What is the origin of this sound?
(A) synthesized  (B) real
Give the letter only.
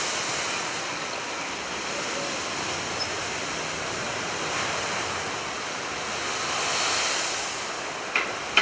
B